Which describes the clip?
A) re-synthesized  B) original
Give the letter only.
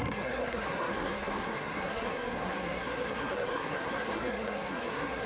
A